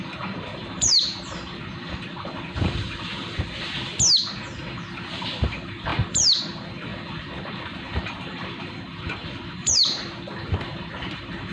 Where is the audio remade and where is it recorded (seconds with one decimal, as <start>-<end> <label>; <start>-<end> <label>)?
0.0-3.9 remade; 3.9-5.1 recorded; 5.1-11.5 remade